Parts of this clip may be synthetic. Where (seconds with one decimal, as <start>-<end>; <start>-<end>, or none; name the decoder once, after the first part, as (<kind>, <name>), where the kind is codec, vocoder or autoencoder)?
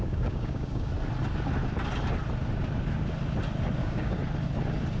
0.0-0.9 (codec, DAC); 3.8-4.2